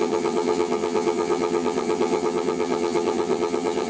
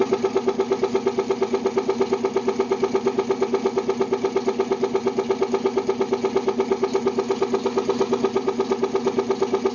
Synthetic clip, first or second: first